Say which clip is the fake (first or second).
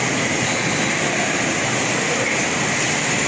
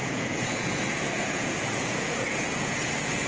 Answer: second